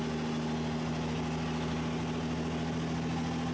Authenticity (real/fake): real